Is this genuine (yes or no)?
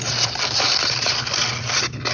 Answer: yes